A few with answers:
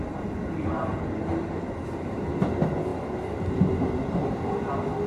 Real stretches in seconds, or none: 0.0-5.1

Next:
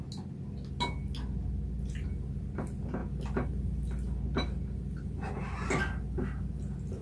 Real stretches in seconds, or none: 0.0-7.0

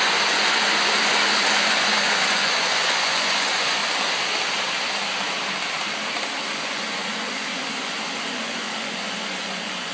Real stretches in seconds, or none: 3.8-6.4

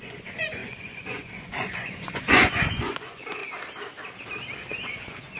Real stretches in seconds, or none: 3.4-4.7

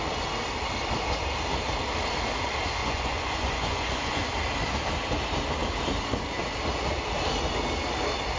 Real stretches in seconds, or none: 0.0-2.8; 4.3-8.4

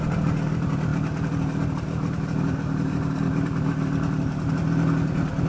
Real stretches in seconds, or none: 0.0-5.5

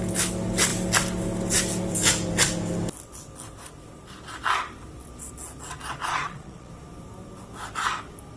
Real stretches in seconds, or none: 0.0-6.1; 6.7-8.4